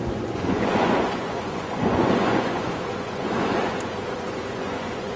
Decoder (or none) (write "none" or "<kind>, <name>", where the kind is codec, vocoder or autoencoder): vocoder, Vocos